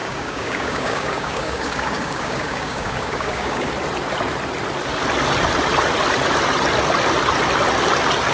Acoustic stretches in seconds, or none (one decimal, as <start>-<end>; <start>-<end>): 3.7-8.3